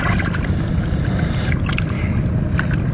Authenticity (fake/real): real